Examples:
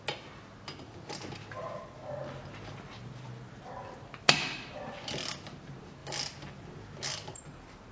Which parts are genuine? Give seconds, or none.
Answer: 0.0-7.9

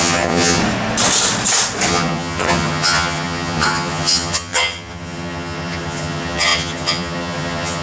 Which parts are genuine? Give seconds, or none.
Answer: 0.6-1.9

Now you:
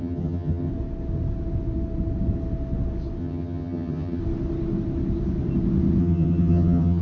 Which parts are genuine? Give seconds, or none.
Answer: 0.7-3.2; 4.2-6.0

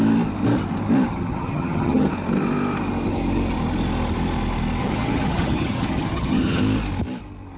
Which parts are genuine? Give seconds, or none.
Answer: 0.0-1.1; 2.1-4.8; 6.6-7.6

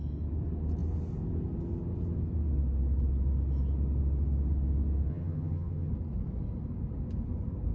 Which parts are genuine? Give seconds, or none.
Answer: 0.0-5.1; 5.9-7.7

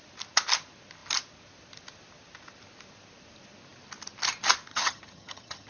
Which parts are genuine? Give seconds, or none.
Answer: 0.0-4.7

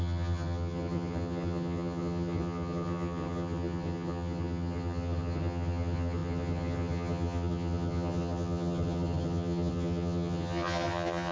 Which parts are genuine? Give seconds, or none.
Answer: none

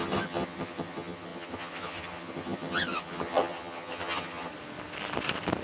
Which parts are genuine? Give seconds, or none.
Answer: 4.5-5.6